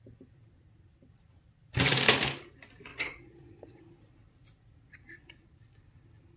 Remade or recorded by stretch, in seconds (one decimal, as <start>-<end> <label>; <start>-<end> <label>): 0.0-2.9 recorded; 2.9-3.8 remade; 3.8-6.4 recorded